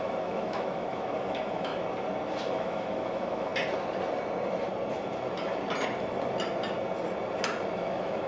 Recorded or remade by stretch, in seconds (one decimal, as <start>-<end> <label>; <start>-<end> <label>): 0.0-1.7 remade; 1.7-2.5 recorded; 2.5-3.5 remade; 3.5-7.7 recorded; 7.7-8.3 remade